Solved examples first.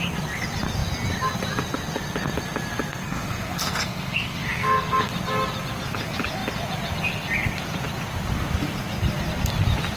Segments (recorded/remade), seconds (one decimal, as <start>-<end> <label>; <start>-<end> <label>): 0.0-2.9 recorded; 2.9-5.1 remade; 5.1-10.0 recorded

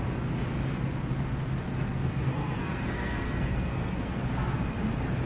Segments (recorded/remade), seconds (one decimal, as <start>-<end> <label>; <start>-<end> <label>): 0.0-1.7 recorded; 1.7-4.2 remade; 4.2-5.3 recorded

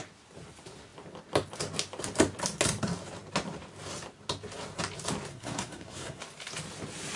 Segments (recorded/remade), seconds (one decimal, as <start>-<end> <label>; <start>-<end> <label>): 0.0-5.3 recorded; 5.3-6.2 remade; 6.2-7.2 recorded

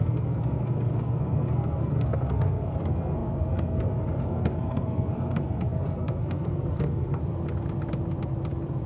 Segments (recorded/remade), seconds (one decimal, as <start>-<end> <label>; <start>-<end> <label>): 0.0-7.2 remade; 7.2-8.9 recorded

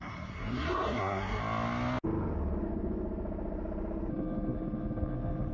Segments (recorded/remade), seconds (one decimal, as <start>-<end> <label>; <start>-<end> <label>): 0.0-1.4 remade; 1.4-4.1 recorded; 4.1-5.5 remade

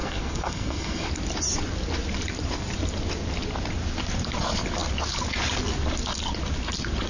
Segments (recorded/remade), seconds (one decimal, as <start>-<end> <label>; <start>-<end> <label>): 0.0-1.1 remade; 1.1-7.1 recorded